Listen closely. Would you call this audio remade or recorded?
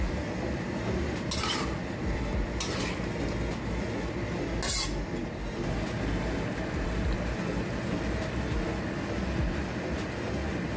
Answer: recorded